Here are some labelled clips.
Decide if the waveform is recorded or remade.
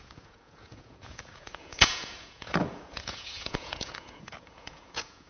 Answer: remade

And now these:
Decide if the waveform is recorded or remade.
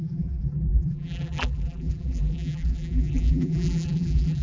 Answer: remade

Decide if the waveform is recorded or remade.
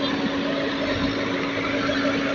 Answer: recorded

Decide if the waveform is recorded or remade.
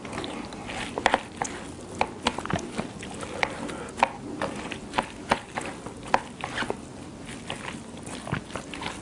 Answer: recorded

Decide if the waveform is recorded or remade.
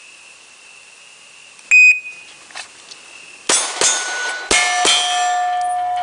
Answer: recorded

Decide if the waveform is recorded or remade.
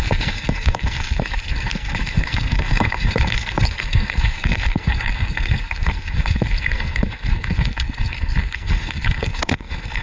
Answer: remade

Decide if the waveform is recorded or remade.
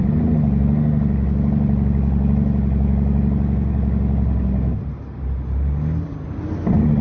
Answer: recorded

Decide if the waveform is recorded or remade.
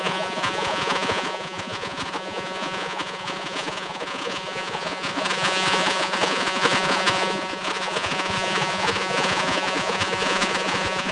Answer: remade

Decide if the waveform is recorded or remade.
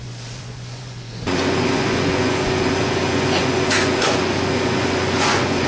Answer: remade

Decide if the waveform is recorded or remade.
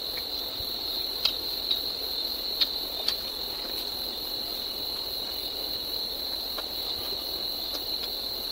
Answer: recorded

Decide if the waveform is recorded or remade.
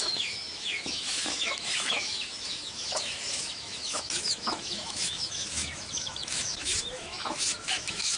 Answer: remade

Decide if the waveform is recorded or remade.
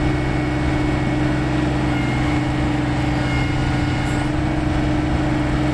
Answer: recorded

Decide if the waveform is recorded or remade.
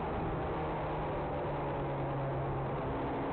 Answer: recorded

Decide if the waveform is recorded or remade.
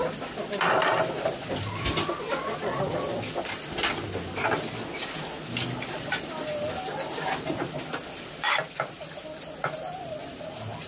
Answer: recorded